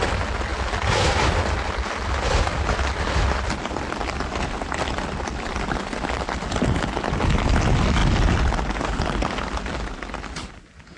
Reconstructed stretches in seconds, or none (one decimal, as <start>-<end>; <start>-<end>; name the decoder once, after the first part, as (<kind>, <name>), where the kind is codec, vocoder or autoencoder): none